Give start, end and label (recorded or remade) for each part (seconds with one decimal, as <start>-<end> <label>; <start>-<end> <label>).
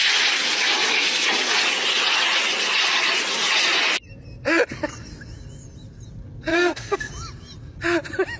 0.0-6.5 recorded; 6.5-7.1 remade; 7.1-8.4 recorded